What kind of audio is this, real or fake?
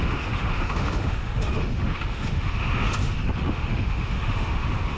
fake